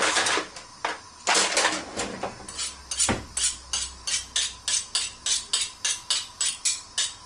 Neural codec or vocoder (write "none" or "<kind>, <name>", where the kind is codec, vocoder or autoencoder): none